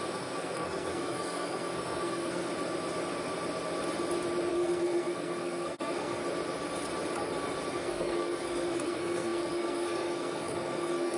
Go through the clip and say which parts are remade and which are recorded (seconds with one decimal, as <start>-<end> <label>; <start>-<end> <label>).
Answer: 0.0-2.5 remade; 2.5-4.5 recorded; 4.5-6.2 remade; 6.2-7.7 recorded; 7.7-11.2 remade